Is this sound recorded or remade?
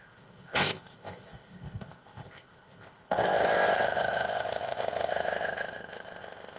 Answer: remade